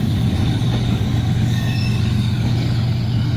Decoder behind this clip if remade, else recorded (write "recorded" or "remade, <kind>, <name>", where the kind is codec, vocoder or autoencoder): remade, codec, DAC